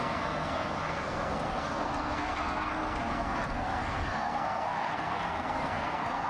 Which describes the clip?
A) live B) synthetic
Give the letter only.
B